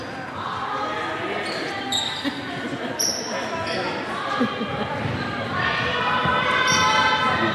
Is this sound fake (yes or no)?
no